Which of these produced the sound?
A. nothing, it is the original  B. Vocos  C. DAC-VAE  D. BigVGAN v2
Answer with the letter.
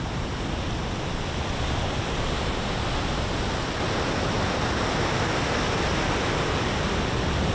A